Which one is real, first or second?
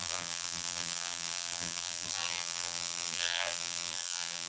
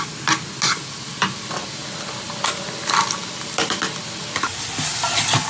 second